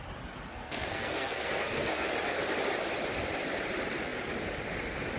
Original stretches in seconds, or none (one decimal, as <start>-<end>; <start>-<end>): 0.0-0.5; 2.1-5.2